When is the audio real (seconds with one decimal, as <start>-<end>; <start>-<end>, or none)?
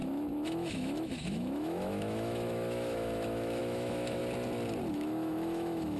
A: 4.2-4.9